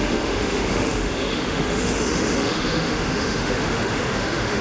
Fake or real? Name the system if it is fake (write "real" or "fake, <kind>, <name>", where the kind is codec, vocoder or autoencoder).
fake, autoencoder, DAC-VAE